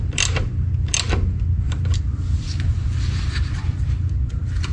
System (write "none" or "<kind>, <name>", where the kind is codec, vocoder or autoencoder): none